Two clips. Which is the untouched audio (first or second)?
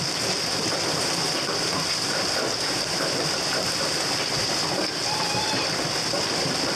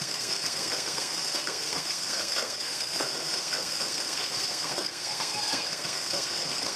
first